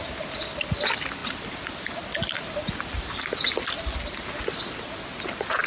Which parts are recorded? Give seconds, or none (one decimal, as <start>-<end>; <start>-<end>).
0.0-5.7